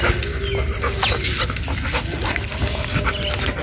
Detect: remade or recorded recorded